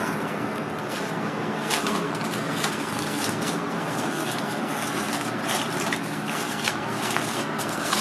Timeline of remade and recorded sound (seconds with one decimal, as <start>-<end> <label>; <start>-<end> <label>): 0.0-5.4 remade; 5.4-6.0 recorded; 6.0-8.0 remade